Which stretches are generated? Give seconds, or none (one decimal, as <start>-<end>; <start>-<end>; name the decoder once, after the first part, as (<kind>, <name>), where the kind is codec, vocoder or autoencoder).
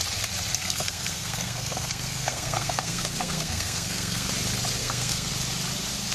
0.6-4.3 (codec, SNAC); 4.8-5.3